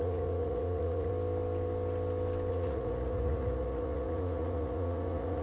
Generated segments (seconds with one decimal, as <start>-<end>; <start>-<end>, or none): 0.0-1.1; 2.5-5.4

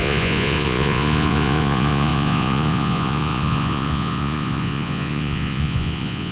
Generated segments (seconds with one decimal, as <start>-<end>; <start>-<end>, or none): 0.0-6.3

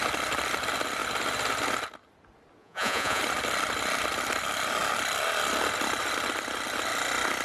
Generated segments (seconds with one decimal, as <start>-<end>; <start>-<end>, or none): 2.6-3.2

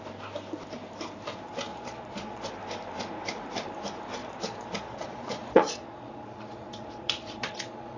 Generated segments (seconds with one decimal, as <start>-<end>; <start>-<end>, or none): 1.7-2.4; 4.2-8.0